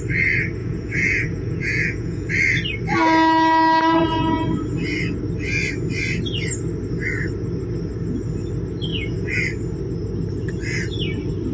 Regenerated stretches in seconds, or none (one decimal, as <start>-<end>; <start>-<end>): 0.6-2.3; 8.9-9.4